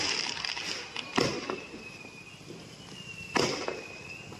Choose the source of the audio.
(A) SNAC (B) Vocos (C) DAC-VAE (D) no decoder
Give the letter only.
D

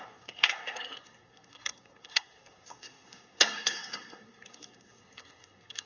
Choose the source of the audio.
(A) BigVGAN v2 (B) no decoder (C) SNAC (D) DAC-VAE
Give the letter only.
C